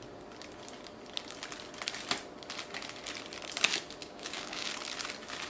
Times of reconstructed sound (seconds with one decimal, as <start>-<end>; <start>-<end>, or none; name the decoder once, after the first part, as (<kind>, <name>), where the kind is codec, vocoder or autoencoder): 4.0-4.7 (codec, DAC)